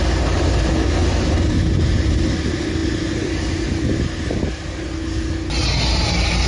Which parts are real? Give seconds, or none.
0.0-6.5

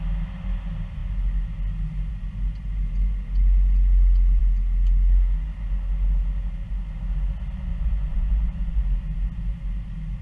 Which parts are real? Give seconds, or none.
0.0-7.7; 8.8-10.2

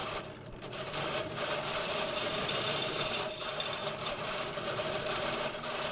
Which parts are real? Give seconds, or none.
0.9-2.4; 3.4-3.8; 4.3-5.9

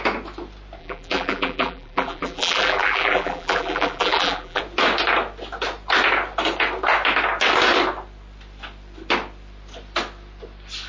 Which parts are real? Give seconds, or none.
0.0-0.8; 4.6-10.9